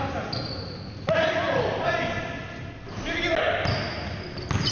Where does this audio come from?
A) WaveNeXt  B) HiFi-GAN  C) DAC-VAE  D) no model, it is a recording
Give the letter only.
D